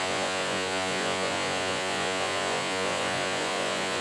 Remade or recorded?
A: remade